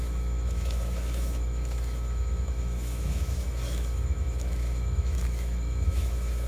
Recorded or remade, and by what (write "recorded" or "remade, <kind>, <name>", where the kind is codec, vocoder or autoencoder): remade, autoencoder, DAC-VAE